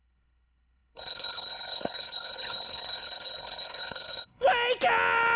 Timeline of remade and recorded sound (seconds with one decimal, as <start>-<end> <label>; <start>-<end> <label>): 0.0-4.5 remade; 4.5-5.4 recorded